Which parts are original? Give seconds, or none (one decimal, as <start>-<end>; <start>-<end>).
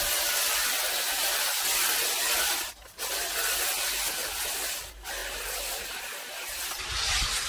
0.0-7.5